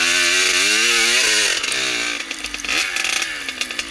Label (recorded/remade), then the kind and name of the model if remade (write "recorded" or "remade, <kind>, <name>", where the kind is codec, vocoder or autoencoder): recorded